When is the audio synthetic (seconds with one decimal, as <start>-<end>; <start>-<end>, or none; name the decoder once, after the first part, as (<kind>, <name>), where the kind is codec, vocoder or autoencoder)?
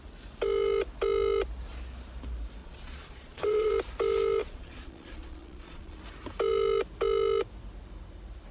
2.6-3.7 (vocoder, Vocos); 4.4-6.0